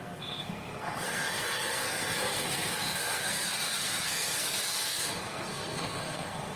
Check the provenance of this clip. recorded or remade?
remade